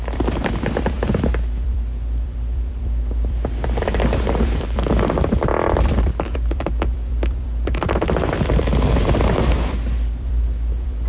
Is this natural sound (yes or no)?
no